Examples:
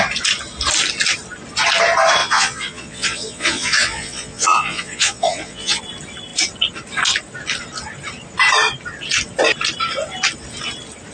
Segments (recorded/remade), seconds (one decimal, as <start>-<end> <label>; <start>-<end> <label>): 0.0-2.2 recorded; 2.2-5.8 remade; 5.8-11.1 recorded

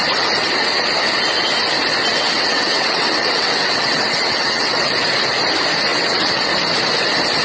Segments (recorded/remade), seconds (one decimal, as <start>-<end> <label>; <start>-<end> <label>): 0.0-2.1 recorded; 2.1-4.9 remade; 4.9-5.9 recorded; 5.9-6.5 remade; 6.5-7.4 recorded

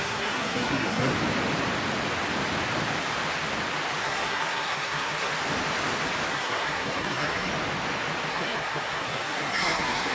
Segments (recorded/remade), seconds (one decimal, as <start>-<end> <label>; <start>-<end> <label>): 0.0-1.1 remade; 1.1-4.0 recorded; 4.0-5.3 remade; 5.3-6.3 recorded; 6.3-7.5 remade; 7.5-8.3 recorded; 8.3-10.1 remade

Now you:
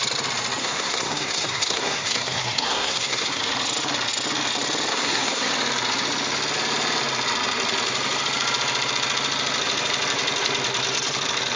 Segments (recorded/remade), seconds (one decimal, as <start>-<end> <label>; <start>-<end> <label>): 0.0-0.6 recorded; 0.6-3.4 remade; 3.4-4.9 recorded; 4.9-5.5 remade; 5.5-11.6 recorded

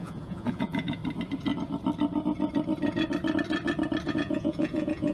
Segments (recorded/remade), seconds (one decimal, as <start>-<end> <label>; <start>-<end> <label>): 0.0-1.0 remade; 1.0-4.1 recorded; 4.1-5.1 remade

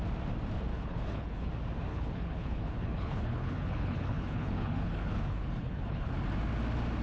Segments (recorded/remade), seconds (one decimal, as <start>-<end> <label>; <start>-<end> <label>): 0.0-0.7 recorded; 0.7-1.5 remade; 1.5-1.9 recorded; 1.9-6.1 remade; 6.1-7.0 recorded

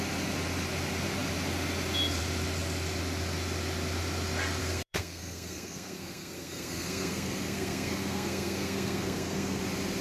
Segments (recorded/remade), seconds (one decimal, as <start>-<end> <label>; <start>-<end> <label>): 0.0-4.6 recorded; 4.6-9.6 remade; 9.6-10.0 recorded

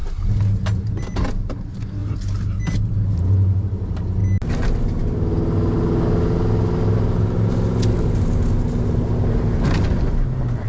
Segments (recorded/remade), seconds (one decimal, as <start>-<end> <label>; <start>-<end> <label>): 0.0-10.7 recorded